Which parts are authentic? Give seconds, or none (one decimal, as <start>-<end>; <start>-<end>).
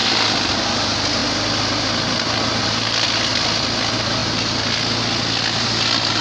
0.0-6.2